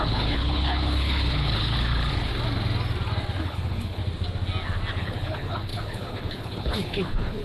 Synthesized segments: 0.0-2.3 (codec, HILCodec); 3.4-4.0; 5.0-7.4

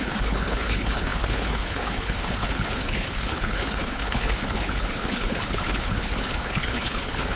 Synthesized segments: 0.0-7.4 (codec, HILCodec)

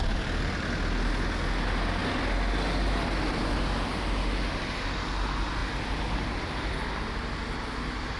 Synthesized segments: none